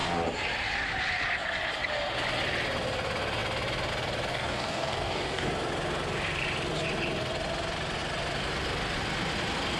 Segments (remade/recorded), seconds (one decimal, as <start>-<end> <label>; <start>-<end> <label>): 0.0-4.3 recorded; 4.3-5.5 remade; 5.5-9.8 recorded